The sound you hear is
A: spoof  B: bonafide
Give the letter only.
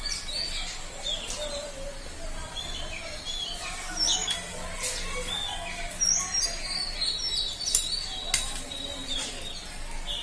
B